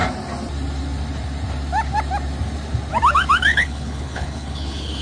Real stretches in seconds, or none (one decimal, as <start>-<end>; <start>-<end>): 0.0-3.5